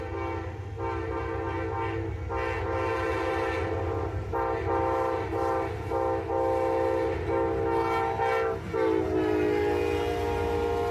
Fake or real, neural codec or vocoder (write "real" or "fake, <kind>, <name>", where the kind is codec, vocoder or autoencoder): real